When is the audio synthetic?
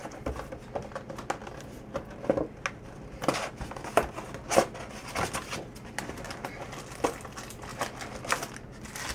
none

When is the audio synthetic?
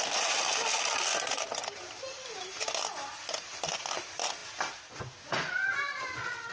none